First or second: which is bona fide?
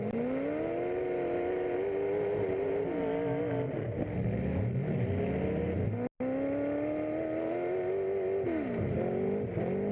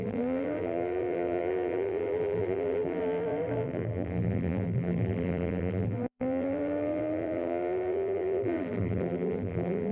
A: first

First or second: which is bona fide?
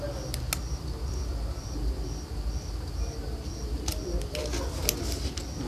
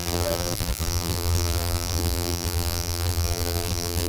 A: first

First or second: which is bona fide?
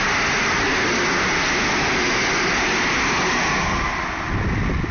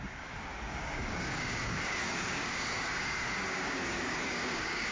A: first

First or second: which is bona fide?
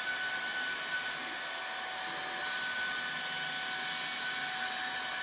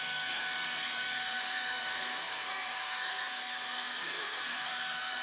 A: first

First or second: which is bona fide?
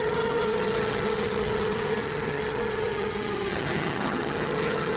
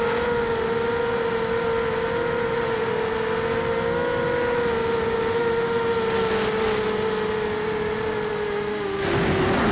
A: second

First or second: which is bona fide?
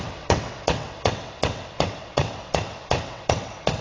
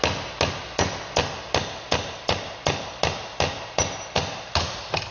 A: second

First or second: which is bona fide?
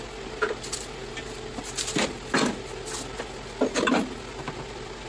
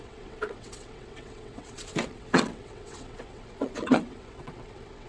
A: first